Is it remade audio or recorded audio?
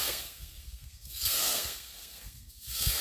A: remade